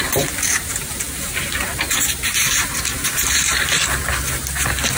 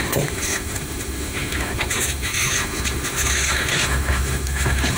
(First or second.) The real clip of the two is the first